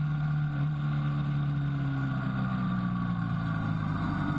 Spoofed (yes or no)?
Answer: no